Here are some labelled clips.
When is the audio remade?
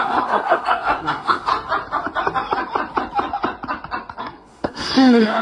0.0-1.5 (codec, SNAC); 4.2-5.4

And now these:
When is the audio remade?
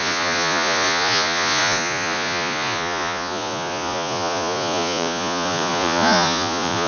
0.0-6.9 (vocoder, Vocos)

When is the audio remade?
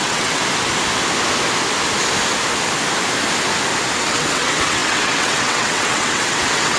0.0-0.4 (vocoder, WaveNeXt); 4.0-6.8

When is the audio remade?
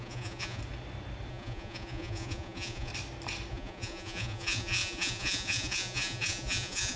0.0-0.6 (vocoder, Vocos); 1.3-2.9; 3.5-7.0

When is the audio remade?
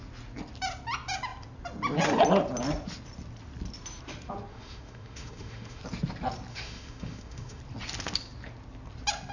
4.5-5.8 (autoencoder, DAC-VAE); 6.5-7.6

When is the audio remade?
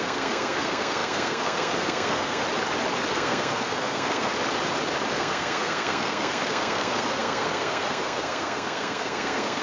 0.0-2.4 (codec, SNAC); 3.1-4.3; 5.1-9.6